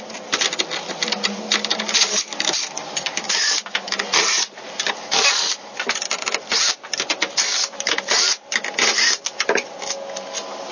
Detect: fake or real real